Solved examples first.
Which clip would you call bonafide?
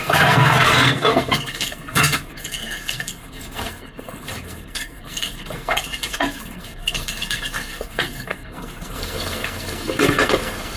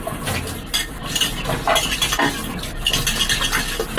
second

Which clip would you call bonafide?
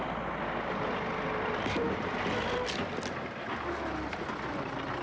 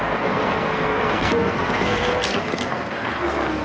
first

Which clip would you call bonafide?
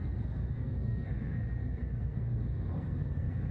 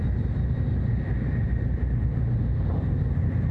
second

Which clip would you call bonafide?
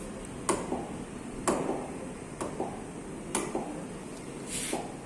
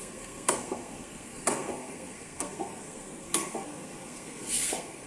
first